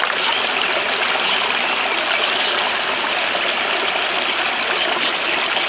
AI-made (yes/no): no